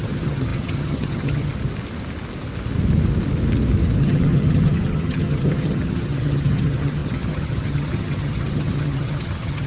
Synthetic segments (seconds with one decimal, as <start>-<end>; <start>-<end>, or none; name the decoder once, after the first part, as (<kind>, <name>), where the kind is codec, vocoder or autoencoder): 0.0-1.5 (vocoder, HiFi-GAN); 4.0-9.7